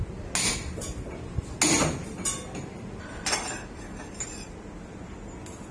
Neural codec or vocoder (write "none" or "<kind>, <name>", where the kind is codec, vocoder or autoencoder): none